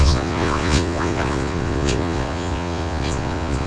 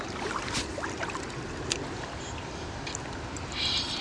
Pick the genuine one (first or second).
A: second